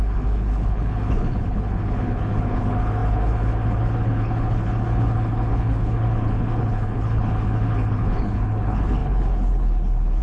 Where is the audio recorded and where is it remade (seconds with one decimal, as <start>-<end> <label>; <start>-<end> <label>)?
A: 0.0-10.2 remade